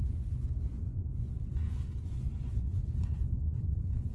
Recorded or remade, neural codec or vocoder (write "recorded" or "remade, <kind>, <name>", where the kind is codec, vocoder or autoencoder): remade, vocoder, Vocos